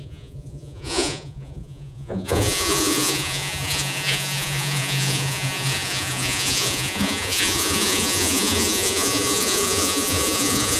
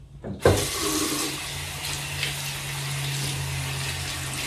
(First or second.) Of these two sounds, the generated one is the first